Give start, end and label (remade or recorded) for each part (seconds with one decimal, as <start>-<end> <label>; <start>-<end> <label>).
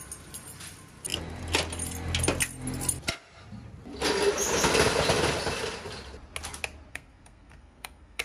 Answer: 0.0-6.9 recorded; 6.9-8.2 remade